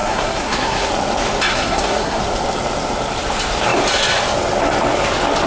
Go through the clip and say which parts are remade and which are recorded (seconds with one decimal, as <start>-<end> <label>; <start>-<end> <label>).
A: 0.0-0.9 remade; 0.9-1.5 recorded; 1.5-2.2 remade; 2.2-5.5 recorded